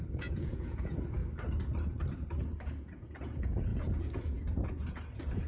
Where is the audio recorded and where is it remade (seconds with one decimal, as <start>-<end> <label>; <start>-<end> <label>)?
0.0-1.2 remade; 1.2-2.6 recorded; 2.6-5.5 remade